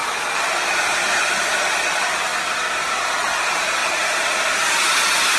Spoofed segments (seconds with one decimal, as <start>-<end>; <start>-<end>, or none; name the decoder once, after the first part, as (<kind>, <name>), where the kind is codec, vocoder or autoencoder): 0.0-2.3 (vocoder, BigVGAN v2); 3.2-5.4